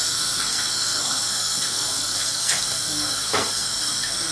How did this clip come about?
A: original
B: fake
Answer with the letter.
B